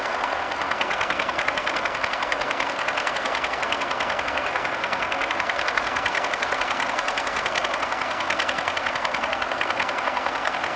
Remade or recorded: remade